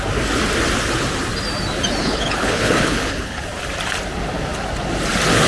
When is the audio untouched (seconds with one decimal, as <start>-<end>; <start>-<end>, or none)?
0.0-2.0; 3.4-5.5